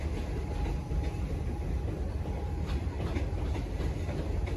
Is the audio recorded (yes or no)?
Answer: yes